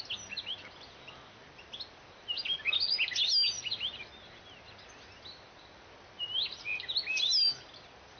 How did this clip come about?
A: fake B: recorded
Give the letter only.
B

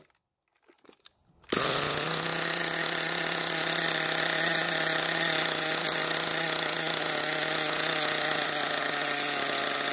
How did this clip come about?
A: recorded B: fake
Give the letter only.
A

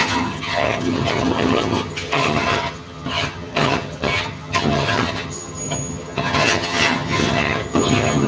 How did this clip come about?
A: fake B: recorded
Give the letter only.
A